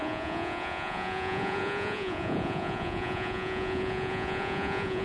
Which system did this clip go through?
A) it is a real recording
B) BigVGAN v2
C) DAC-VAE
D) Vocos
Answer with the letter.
D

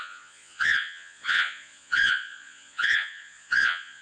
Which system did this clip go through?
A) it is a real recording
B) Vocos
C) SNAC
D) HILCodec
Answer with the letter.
B